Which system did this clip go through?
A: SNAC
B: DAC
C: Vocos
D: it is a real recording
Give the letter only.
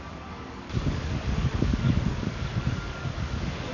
B